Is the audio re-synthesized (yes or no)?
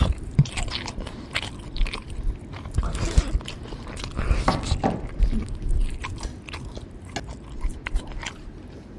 no